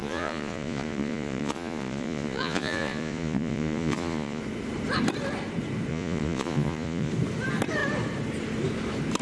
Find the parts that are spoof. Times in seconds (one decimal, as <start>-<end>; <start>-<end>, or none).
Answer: 0.0-4.4; 5.9-7.1